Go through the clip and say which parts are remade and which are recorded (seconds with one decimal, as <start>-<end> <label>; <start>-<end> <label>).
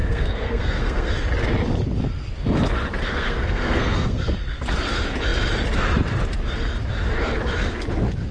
0.0-1.1 remade; 1.1-3.0 recorded; 3.0-4.3 remade; 4.3-8.3 recorded